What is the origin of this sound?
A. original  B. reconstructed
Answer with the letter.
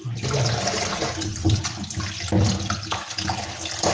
A